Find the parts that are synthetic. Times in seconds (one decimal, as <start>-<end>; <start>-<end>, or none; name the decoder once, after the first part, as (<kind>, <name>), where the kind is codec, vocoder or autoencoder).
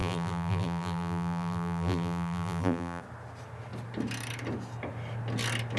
0.0-3.0 (vocoder, BigVGAN v2)